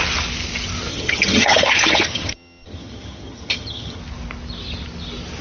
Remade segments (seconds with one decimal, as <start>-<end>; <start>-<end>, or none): 0.9-4.0